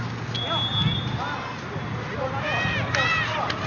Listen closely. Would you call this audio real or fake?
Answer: real